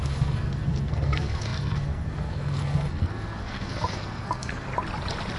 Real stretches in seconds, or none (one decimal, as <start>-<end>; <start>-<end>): 4.7-5.4